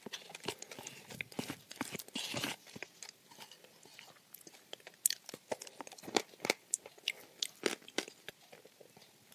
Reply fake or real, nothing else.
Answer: real